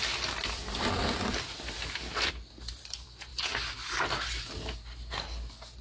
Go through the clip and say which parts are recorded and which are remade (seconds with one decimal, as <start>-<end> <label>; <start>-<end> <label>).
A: 0.0-5.8 recorded